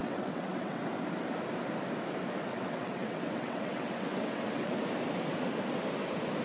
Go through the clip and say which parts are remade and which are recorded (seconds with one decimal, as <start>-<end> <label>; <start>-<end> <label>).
0.0-0.8 remade; 0.8-2.5 recorded; 2.5-4.8 remade; 4.8-6.4 recorded